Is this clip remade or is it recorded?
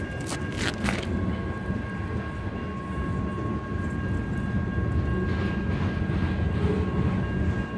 recorded